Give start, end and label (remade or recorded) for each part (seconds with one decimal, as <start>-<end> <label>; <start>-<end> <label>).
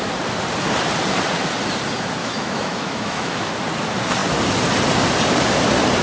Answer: 0.0-2.2 recorded; 2.2-3.5 remade; 3.5-6.0 recorded